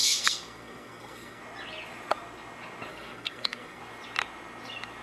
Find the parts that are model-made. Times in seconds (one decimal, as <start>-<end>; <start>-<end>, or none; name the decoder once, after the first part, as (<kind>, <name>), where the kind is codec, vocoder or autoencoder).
0.0-1.4 (codec, SNAC); 2.9-3.8